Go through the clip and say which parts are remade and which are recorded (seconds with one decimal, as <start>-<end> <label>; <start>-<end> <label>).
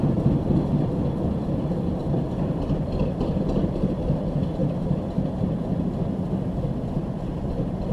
0.0-2.0 recorded; 2.0-3.7 remade; 3.7-4.6 recorded; 4.6-5.4 remade; 5.4-7.9 recorded